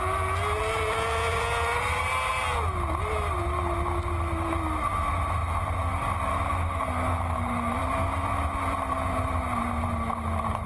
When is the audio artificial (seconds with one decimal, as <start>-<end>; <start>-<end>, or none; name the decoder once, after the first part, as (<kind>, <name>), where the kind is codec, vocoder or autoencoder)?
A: 6.3-7.8 (autoencoder, DAC-VAE)